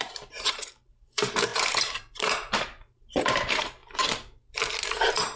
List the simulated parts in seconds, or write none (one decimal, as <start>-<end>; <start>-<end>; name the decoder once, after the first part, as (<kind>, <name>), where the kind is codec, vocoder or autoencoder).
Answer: 0.0-3.8 (vocoder, BigVGAN v2); 4.8-5.4